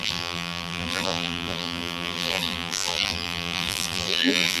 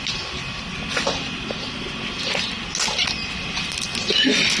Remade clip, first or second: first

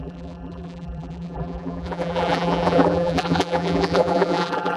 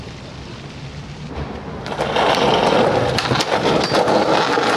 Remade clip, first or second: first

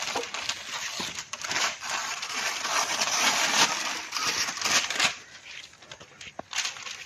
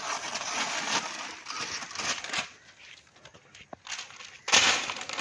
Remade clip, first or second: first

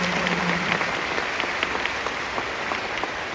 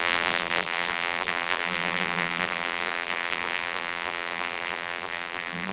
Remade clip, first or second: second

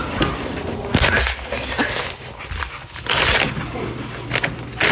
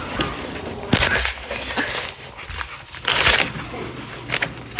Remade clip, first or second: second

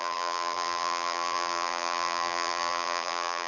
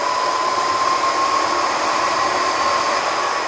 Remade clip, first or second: first